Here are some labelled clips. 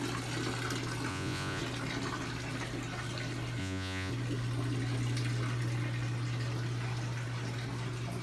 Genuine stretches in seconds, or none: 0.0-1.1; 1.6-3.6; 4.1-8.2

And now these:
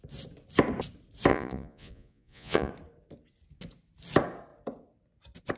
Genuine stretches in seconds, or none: 0.0-1.3; 2.7-5.6

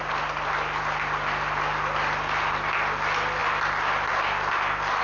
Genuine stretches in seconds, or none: 0.0-5.0

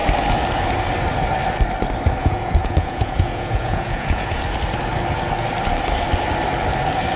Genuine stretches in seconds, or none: 0.0-2.2; 4.4-7.2

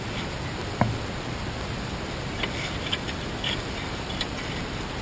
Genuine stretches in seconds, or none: 0.0-5.0

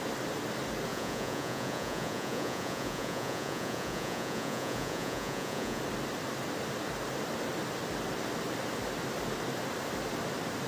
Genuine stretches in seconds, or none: 0.0-0.9; 5.8-10.7

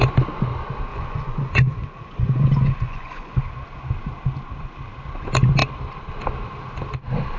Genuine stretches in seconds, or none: 0.0-0.9; 3.4-7.4